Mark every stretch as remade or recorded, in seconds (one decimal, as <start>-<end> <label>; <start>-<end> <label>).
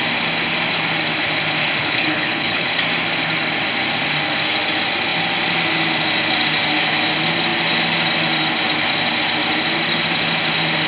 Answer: 0.0-1.8 recorded; 1.8-2.7 remade; 2.7-10.9 recorded